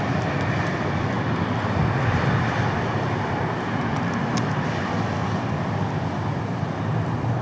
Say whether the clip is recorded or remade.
recorded